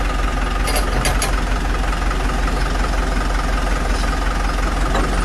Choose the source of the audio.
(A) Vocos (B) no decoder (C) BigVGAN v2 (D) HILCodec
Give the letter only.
B